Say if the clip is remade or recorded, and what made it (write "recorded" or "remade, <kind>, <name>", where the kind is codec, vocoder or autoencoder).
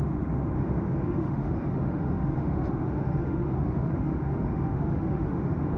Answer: remade, autoencoder, DAC-VAE